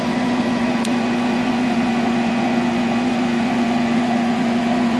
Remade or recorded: remade